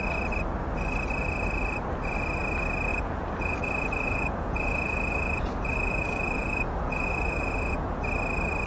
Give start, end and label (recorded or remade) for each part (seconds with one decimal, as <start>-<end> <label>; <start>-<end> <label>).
0.0-2.9 recorded; 2.9-8.0 remade; 8.0-8.7 recorded